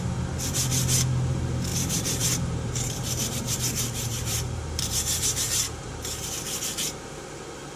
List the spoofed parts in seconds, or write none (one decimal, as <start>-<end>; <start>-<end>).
1.7-6.3